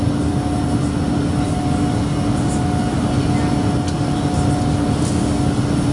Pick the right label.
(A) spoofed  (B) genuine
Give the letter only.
B